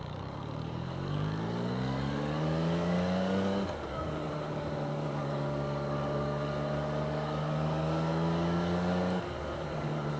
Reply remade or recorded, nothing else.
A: remade